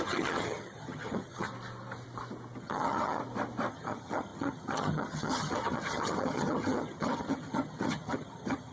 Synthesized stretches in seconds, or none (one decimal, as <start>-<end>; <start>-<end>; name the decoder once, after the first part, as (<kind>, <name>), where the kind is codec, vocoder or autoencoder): 0.0-1.5 (vocoder, HiFi-GAN); 2.6-3.2; 3.7-8.7